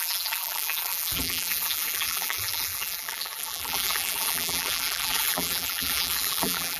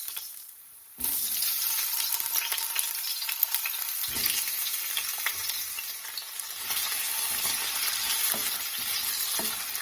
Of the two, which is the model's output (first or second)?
first